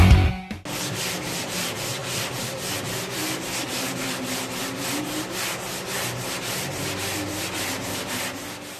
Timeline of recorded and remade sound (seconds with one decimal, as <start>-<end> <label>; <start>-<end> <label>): 0.0-8.8 recorded